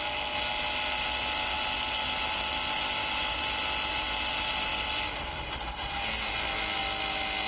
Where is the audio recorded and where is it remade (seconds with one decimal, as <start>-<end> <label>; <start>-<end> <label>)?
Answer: 0.0-7.5 recorded